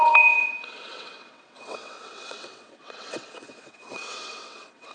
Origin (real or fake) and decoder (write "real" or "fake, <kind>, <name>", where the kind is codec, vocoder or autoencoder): fake, vocoder, WaveNeXt